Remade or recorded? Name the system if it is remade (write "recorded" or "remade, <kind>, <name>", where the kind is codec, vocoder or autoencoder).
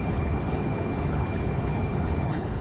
remade, codec, HILCodec